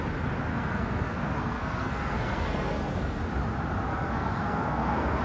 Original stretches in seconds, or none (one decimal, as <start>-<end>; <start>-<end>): 0.0-0.5; 3.2-3.9